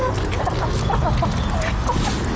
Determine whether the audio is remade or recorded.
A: recorded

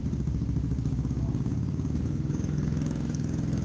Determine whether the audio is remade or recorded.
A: remade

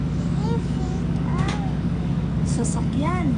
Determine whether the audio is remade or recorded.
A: remade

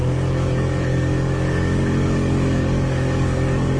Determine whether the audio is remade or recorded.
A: remade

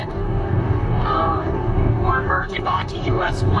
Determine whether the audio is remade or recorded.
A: remade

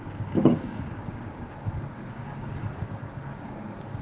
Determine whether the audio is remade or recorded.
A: remade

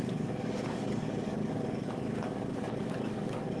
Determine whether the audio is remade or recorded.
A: remade